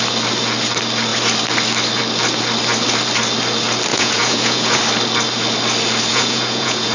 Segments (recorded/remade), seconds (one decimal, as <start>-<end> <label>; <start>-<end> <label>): 0.0-3.9 recorded; 3.9-4.8 remade; 4.8-6.1 recorded; 6.1-6.9 remade